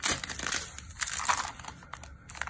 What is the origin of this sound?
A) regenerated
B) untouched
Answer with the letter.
B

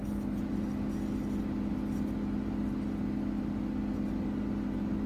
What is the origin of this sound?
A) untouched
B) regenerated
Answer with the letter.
A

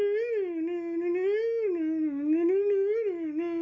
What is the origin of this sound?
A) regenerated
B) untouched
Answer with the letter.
B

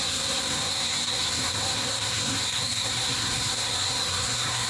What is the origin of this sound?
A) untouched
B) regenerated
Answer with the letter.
B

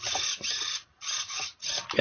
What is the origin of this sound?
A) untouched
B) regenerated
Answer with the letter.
A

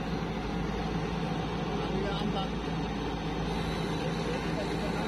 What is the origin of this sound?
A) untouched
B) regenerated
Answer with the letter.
A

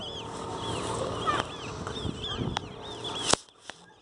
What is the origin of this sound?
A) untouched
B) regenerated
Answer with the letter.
A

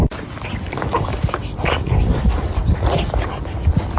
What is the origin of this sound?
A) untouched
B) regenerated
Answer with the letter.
A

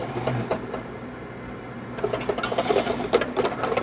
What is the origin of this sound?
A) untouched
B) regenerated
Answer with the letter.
A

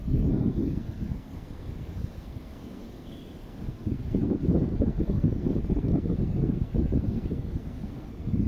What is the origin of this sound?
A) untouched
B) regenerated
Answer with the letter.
B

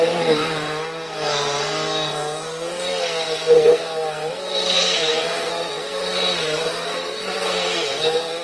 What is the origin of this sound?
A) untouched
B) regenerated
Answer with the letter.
B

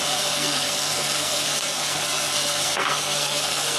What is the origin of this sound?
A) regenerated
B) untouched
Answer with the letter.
A